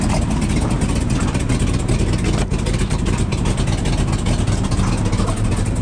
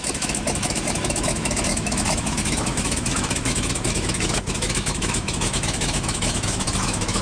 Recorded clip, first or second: first